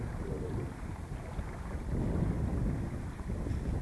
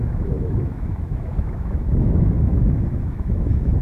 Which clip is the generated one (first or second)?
second